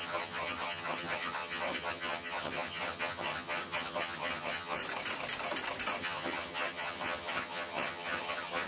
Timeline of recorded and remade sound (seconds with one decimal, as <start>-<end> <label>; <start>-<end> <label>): 0.0-4.8 remade; 4.8-6.0 recorded; 6.0-8.7 remade